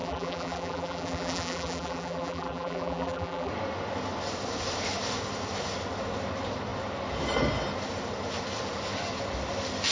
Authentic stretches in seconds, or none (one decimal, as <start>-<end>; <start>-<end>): 3.5-9.9